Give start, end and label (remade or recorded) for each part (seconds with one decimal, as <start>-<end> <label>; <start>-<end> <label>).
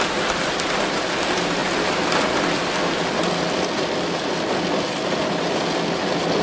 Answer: 0.0-6.4 recorded